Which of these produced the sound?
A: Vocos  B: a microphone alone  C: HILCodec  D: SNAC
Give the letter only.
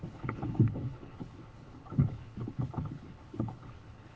C